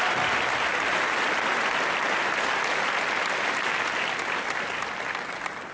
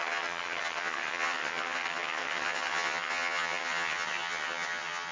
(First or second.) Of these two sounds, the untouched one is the first